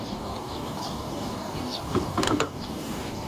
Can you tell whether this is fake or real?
fake